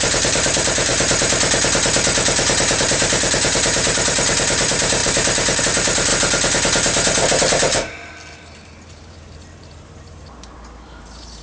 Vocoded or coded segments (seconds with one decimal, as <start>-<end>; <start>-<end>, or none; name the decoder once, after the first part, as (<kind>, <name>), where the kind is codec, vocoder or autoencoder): 0.0-0.9 (vocoder, BigVGAN v2); 2.8-6.1; 8.3-11.4